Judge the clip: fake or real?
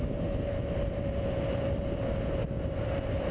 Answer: fake